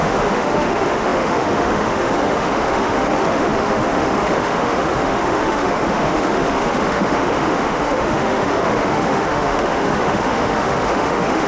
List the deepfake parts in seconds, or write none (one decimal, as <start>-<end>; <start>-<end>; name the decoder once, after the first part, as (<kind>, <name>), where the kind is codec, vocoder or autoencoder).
0.0-11.5 (autoencoder, DAC-VAE)